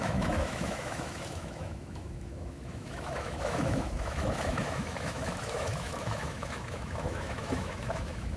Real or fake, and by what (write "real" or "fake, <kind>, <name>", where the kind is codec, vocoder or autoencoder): fake, autoencoder, DAC-VAE